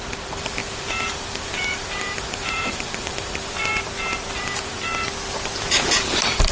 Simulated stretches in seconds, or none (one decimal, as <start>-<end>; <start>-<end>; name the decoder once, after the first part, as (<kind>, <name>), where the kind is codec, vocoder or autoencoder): 0.0-3.7 (vocoder, BigVGAN v2); 4.3-4.9; 6.0-6.5